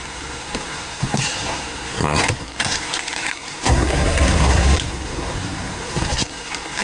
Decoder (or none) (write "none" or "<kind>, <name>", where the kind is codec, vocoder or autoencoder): codec, SNAC